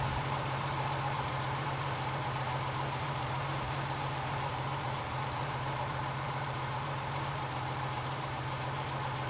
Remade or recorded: remade